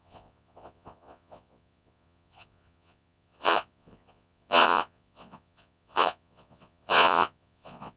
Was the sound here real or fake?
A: fake